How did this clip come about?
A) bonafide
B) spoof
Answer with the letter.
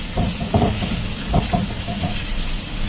B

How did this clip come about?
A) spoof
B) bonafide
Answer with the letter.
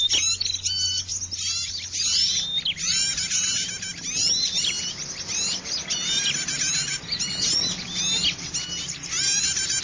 B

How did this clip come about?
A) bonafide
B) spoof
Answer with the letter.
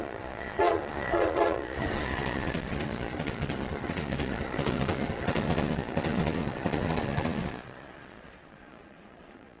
B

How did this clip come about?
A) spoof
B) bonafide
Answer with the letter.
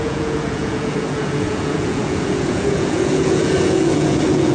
A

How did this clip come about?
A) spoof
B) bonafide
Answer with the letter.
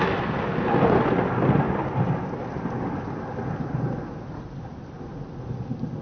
B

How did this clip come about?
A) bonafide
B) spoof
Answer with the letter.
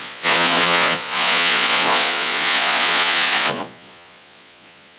B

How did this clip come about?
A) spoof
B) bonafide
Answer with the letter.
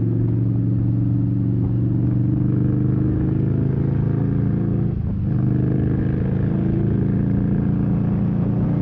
B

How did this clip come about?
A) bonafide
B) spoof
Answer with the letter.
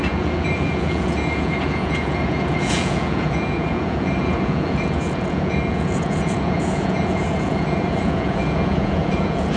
B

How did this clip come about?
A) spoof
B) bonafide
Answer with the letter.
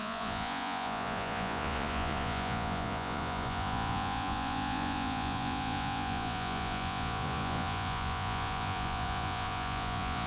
A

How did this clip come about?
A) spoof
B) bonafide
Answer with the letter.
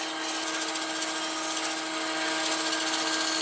B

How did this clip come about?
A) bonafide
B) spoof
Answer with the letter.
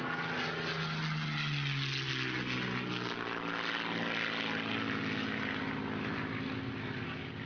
A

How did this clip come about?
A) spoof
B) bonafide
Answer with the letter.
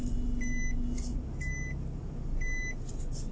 B